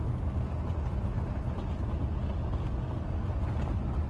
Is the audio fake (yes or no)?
no